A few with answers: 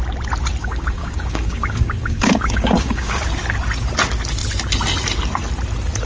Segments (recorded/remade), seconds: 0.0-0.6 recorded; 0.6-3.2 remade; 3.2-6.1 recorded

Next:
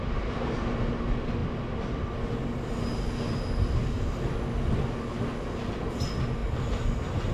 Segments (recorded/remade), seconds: 0.0-7.3 recorded

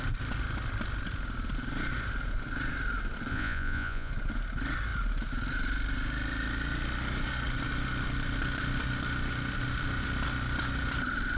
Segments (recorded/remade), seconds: 0.0-3.3 recorded; 3.3-4.1 remade; 4.1-11.4 recorded

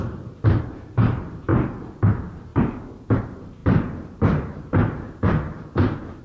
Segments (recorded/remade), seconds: 0.0-1.5 remade; 1.5-2.1 recorded; 2.1-2.5 remade; 2.5-3.2 recorded; 3.2-6.2 remade

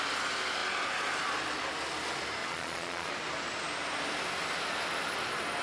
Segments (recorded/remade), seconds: 0.0-2.4 recorded; 2.4-3.1 remade; 3.1-5.6 recorded

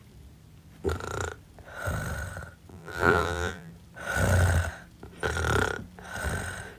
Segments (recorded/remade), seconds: 0.0-2.7 recorded; 2.7-3.7 remade; 3.7-6.8 recorded

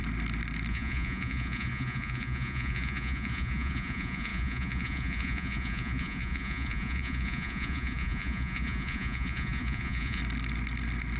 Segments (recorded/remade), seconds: 0.0-0.7 recorded; 0.7-10.2 remade; 10.2-11.2 recorded

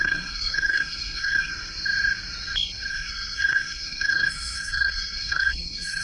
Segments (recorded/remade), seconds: 0.0-1.5 remade; 1.5-2.9 recorded; 2.9-6.0 remade